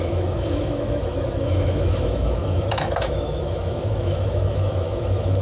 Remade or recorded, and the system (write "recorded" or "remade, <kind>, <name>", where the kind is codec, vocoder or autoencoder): remade, autoencoder, DAC-VAE